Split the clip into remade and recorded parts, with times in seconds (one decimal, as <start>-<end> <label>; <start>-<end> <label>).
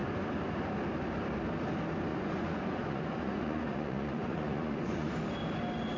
0.0-2.1 recorded; 2.1-5.1 remade; 5.1-6.0 recorded